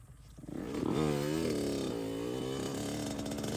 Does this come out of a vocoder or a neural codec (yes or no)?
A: no